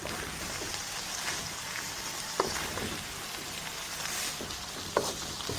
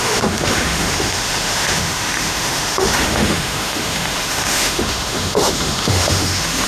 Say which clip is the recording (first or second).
first